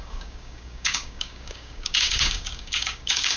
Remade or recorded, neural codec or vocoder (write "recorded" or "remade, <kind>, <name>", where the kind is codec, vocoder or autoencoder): remade, codec, DAC